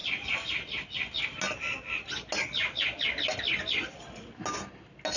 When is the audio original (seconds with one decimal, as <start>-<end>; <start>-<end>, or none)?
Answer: 0.0-5.2